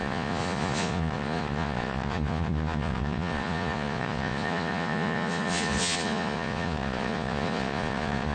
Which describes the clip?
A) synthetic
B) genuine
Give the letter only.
A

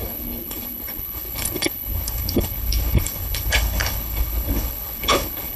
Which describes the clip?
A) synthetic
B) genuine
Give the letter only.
A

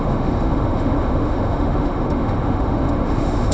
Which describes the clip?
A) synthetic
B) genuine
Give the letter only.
A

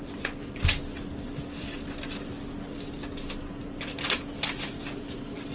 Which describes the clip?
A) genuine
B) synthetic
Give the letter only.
A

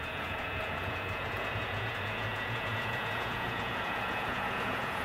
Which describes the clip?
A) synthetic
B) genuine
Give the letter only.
A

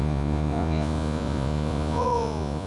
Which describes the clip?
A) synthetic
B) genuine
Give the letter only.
A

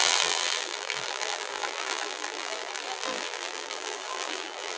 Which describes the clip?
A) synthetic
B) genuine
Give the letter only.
A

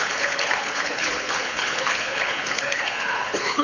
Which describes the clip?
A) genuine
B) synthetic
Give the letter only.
B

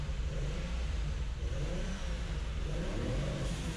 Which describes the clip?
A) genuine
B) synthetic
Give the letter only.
B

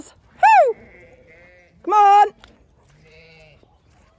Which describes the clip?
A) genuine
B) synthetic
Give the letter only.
A